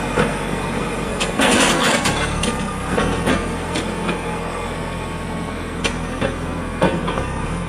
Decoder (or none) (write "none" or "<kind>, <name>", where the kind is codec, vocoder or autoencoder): codec, SNAC